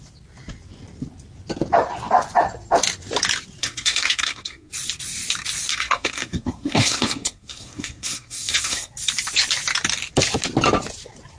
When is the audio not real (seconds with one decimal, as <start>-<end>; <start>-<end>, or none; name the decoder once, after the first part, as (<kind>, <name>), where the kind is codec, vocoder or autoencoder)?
3.6-4.7 (codec, SNAC); 5.7-8.9